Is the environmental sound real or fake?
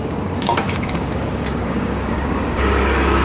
fake